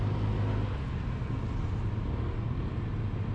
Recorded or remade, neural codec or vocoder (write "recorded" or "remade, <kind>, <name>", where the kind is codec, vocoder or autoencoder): recorded